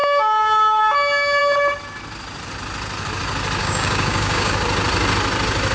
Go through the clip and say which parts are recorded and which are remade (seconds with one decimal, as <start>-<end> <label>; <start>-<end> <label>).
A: 0.0-0.8 remade; 0.8-3.6 recorded; 3.6-4.6 remade; 4.6-5.7 recorded